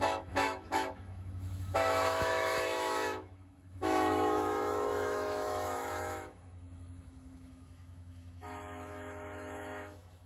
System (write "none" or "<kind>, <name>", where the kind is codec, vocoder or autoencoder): autoencoder, DAC-VAE